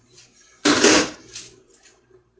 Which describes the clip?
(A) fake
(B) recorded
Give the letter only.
A